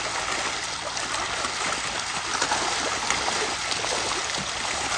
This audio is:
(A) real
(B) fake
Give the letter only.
A